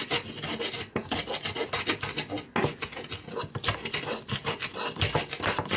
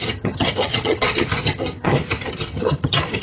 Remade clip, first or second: second